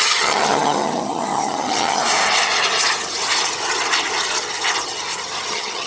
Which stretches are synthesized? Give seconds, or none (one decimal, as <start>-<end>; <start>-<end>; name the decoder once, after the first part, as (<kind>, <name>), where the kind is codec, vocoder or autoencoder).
0.0-2.0 (vocoder, HiFi-GAN); 5.5-5.9